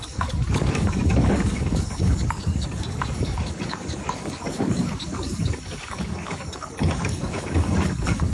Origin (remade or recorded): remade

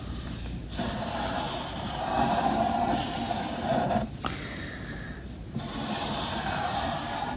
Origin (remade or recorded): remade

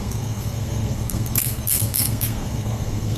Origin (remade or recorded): remade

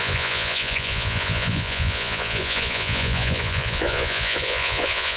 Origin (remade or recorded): remade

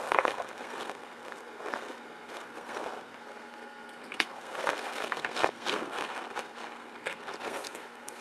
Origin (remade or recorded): remade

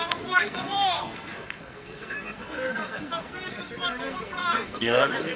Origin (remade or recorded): remade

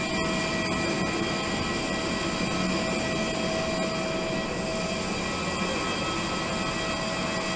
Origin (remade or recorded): recorded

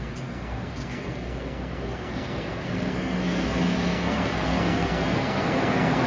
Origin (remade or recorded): remade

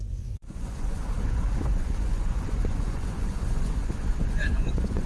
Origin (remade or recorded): remade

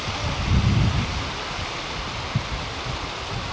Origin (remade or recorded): recorded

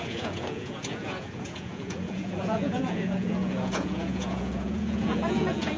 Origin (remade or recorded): remade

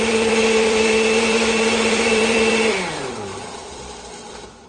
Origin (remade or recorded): remade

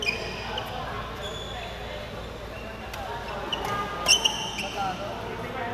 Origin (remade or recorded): recorded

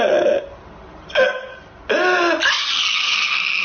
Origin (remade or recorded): recorded